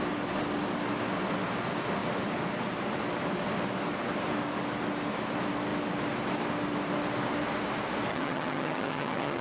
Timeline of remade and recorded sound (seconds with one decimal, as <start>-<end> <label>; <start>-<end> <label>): 0.0-8.1 recorded; 8.1-9.4 remade